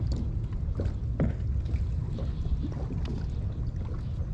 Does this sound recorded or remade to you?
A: recorded